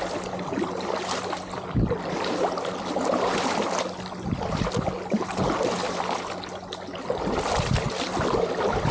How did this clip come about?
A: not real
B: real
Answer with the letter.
B